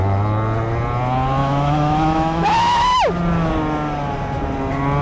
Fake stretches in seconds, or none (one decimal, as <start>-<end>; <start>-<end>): 1.4-3.2